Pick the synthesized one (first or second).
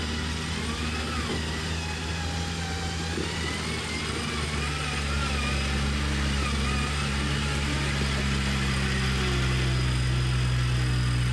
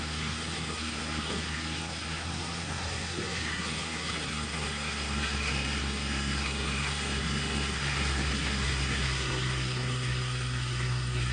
second